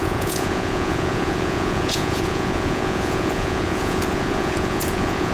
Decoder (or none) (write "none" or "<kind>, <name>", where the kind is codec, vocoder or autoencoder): vocoder, Vocos